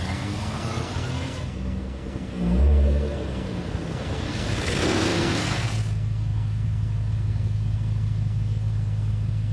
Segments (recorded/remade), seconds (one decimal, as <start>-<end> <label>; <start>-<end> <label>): 0.0-9.5 remade